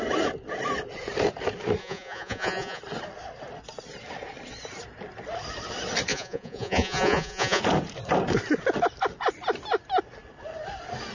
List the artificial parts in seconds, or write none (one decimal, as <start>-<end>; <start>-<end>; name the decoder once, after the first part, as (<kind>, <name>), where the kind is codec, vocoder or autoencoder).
1.8-2.8 (vocoder, Vocos); 6.1-7.6